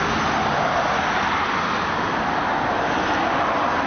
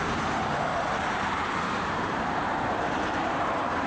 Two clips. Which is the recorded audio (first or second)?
first